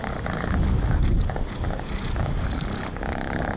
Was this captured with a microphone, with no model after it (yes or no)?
no